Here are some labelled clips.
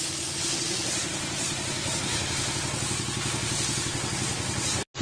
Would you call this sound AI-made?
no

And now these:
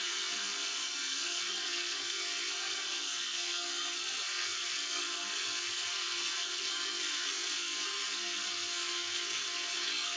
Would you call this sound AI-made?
yes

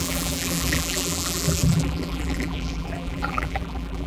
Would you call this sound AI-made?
yes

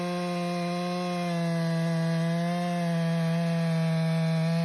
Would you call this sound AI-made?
no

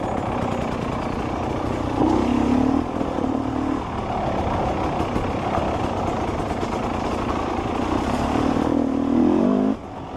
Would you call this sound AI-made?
no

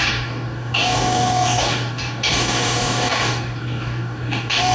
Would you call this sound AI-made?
yes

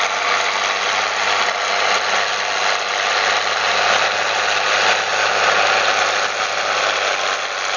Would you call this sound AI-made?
no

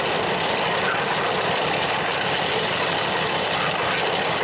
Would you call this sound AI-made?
no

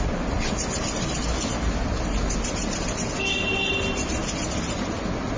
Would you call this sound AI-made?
no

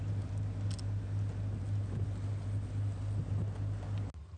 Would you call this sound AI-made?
no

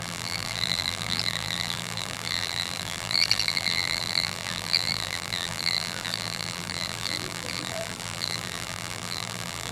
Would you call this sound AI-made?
yes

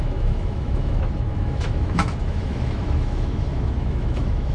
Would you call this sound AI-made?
yes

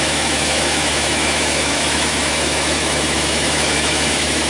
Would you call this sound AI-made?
yes